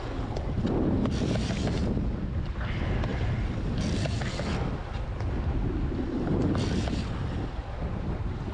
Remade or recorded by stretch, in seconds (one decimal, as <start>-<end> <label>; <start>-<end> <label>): 0.0-8.5 recorded